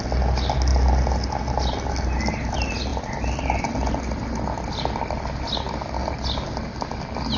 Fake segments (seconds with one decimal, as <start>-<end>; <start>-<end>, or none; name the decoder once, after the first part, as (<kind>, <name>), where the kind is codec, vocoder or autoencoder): none